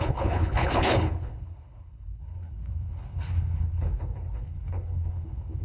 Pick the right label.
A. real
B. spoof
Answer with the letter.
B